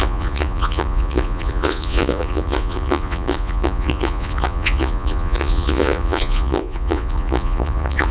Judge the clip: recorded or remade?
remade